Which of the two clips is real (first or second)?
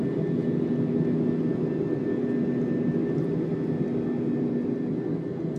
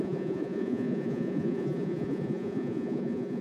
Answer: first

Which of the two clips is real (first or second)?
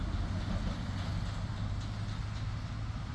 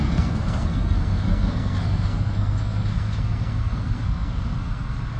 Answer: first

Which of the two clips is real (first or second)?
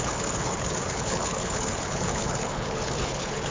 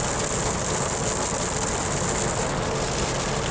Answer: second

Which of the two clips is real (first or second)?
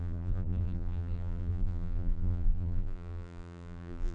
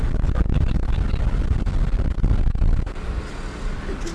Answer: second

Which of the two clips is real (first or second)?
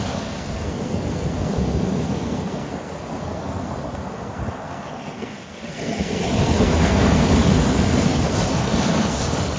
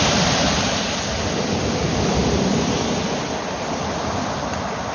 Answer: second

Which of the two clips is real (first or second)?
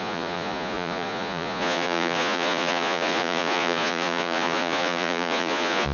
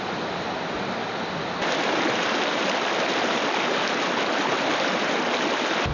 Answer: second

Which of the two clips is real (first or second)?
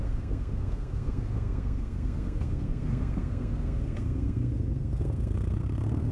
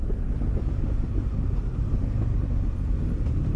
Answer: second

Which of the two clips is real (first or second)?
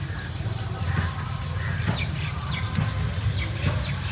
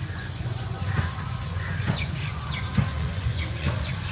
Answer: first